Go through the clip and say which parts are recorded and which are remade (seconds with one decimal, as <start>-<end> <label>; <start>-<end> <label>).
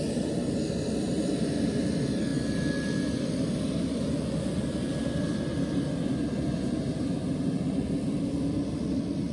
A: 0.0-9.3 recorded